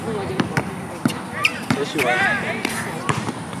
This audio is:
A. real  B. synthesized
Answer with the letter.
B